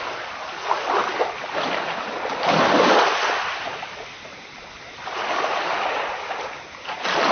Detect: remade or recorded recorded